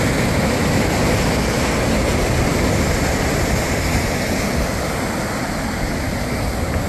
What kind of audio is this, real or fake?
real